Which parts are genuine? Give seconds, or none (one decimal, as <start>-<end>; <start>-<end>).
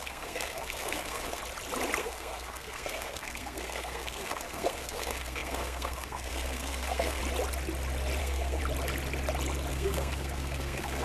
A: 1.4-2.0; 7.2-8.2; 8.6-9.7